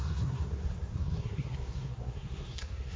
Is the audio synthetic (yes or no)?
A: yes